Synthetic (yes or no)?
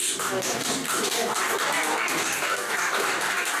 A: yes